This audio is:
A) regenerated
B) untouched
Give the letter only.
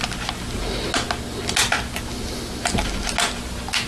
B